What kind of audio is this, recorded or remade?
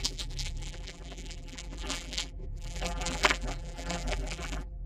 remade